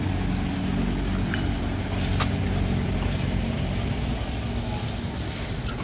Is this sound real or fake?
real